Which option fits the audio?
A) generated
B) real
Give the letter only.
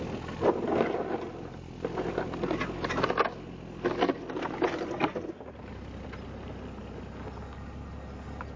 B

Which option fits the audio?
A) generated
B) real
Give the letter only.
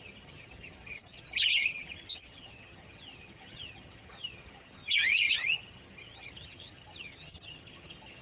A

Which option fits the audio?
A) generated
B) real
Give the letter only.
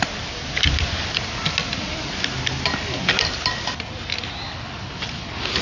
B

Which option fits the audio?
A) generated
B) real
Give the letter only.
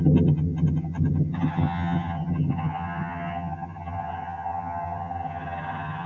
A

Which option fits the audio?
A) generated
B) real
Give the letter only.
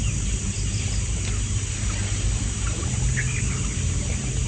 B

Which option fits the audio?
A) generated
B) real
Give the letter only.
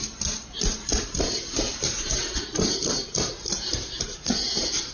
B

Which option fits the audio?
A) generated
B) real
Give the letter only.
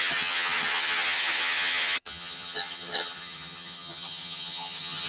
A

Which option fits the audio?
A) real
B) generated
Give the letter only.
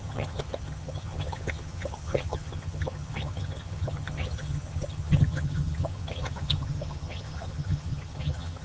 B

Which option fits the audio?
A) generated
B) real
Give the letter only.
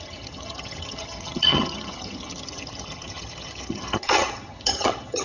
A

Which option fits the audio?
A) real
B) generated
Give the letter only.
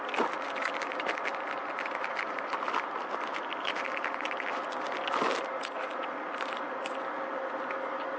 A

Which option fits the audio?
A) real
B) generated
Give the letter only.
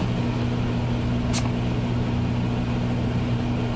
A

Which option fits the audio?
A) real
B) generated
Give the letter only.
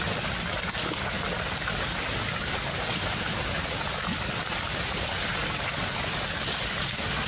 A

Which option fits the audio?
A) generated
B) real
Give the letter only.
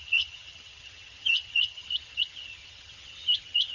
A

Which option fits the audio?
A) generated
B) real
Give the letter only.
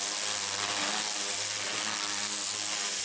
B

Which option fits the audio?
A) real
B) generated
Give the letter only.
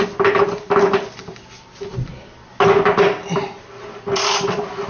A